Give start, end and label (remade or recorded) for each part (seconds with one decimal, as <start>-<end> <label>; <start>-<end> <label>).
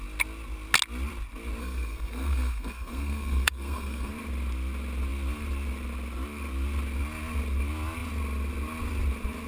0.0-1.6 recorded; 1.6-4.1 remade; 4.1-9.5 recorded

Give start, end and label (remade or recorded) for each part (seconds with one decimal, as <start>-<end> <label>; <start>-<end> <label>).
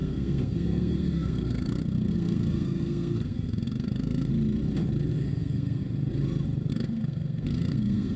0.0-4.3 remade; 4.3-5.1 recorded; 5.1-5.8 remade; 5.8-6.7 recorded; 6.7-8.2 remade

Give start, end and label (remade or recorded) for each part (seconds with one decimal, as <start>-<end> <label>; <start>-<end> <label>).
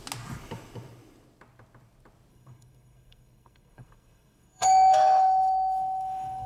0.0-2.3 recorded; 2.3-6.5 remade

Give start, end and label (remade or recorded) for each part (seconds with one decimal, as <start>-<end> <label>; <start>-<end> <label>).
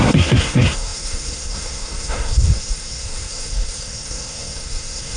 0.0-5.2 remade